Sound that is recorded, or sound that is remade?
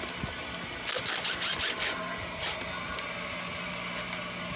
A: recorded